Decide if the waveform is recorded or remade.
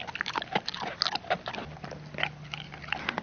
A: recorded